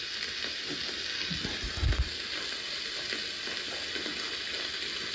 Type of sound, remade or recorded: recorded